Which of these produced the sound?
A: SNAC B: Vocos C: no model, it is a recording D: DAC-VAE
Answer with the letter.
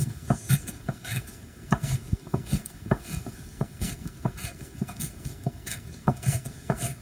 A